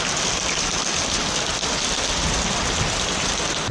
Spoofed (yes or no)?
no